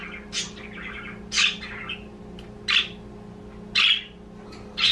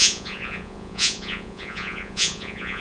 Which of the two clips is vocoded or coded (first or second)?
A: second